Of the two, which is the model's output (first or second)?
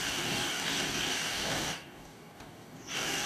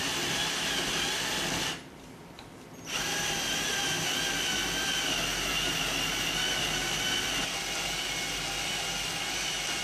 first